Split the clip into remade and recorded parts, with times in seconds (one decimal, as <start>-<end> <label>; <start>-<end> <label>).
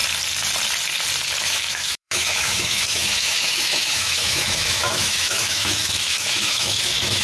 0.0-1.4 recorded; 1.4-7.2 remade